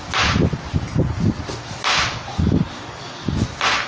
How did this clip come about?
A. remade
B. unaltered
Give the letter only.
B